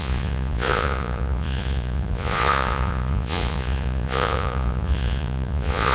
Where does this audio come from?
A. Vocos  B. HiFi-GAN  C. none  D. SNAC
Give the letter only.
A